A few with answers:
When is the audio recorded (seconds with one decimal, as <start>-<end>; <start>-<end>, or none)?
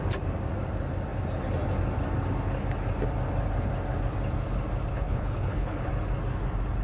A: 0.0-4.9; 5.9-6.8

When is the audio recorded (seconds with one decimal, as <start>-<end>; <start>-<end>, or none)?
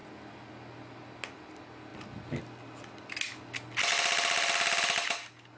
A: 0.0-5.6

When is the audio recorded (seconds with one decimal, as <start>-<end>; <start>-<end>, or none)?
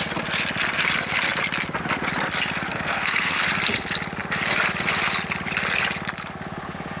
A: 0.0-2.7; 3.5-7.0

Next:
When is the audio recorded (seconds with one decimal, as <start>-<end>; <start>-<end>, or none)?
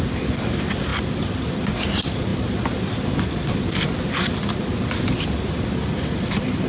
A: 0.0-6.7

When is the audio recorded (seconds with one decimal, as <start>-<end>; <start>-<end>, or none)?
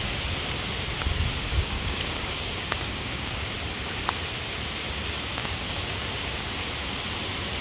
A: 0.0-1.5; 3.5-5.4; 6.6-7.6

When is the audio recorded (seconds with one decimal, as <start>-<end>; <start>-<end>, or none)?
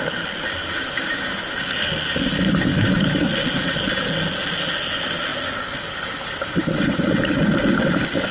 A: 0.0-0.6; 1.2-2.7; 3.3-8.3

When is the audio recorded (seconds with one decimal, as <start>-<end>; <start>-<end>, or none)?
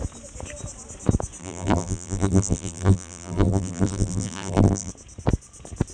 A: 0.0-1.4; 4.9-5.9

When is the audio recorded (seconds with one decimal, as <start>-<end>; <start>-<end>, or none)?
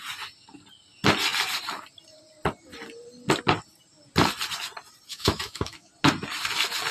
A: 0.0-5.1; 5.9-6.9